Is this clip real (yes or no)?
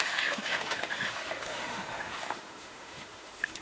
no